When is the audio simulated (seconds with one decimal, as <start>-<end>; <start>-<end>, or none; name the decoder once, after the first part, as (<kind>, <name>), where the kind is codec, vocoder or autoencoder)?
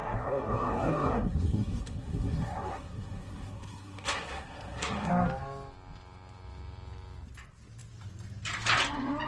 0.0-5.1 (codec, SNAC)